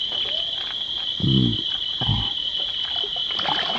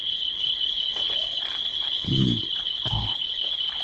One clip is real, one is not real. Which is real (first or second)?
first